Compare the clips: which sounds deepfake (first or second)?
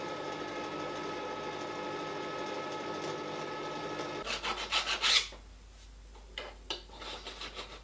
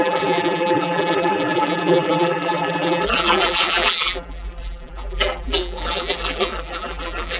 second